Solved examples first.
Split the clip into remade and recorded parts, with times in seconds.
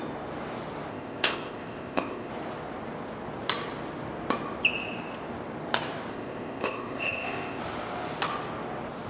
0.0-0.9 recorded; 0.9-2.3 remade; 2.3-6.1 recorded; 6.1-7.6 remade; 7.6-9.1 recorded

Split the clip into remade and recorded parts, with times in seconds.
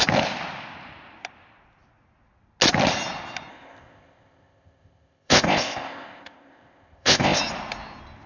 0.0-3.5 recorded; 3.5-7.4 remade; 7.4-8.3 recorded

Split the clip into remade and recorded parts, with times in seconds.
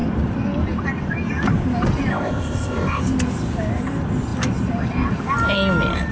0.0-2.1 recorded; 2.1-3.0 remade; 3.0-6.1 recorded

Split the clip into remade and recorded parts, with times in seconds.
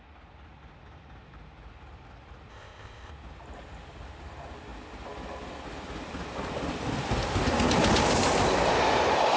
0.0-2.5 recorded; 2.5-3.1 remade; 3.1-9.4 recorded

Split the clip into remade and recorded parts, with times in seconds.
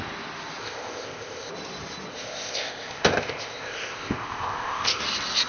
0.0-0.6 recorded; 0.6-1.5 remade; 1.5-2.1 recorded; 2.1-5.0 remade; 5.0-5.5 recorded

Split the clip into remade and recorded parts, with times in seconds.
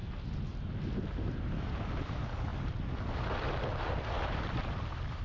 0.0-5.2 recorded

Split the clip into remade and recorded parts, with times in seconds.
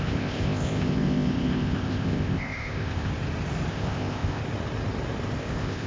0.0-3.1 remade; 3.1-3.7 recorded; 3.7-4.4 remade; 4.4-5.4 recorded; 5.4-5.9 remade